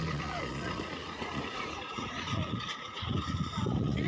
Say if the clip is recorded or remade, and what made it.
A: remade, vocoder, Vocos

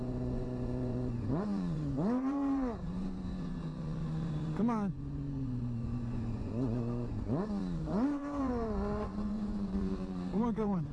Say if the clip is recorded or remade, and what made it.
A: remade, vocoder, Vocos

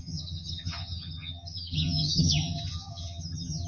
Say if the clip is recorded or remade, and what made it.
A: remade, vocoder, HiFi-GAN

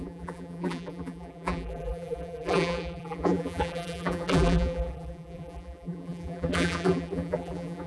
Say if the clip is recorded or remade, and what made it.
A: remade, vocoder, BigVGAN v2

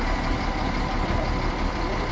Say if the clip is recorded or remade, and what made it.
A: recorded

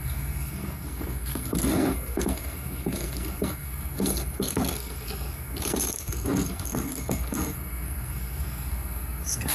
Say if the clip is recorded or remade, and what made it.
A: remade, codec, SNAC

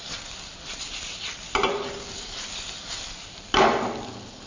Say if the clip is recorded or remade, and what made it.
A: recorded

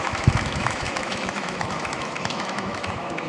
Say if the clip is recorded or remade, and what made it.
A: remade, autoencoder, DAC-VAE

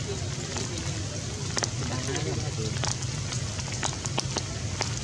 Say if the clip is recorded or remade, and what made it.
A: recorded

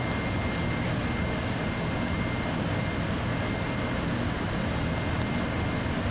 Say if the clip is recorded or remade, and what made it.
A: recorded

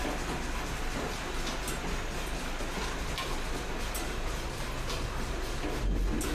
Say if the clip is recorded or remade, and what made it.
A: recorded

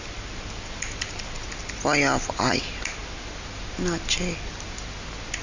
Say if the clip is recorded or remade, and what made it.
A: recorded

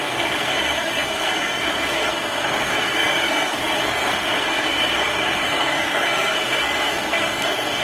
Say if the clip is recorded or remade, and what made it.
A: remade, codec, SNAC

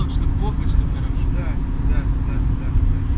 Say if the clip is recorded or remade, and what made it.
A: recorded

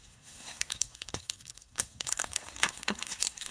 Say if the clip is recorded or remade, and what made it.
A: remade, codec, SNAC